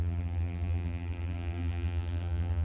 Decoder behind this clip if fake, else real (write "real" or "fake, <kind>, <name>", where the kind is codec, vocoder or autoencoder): fake, vocoder, BigVGAN v2